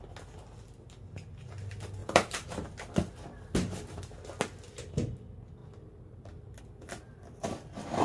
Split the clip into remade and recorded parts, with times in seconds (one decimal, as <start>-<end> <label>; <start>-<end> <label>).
0.0-2.0 recorded; 2.0-2.7 remade; 2.7-5.6 recorded; 5.6-6.6 remade; 6.6-8.0 recorded